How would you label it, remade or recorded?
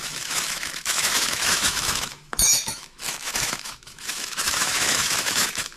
remade